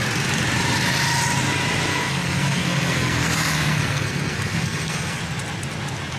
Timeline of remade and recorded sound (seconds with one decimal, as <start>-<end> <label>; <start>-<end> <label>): 0.0-1.9 recorded; 1.9-5.2 remade; 5.2-6.2 recorded